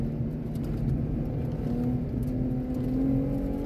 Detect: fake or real real